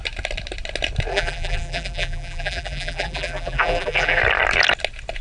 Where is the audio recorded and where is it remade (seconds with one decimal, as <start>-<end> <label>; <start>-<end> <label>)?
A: 0.0-1.1 recorded; 1.1-4.2 remade; 4.2-5.2 recorded